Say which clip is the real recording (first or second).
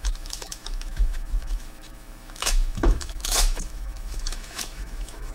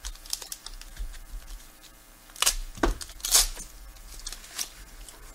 second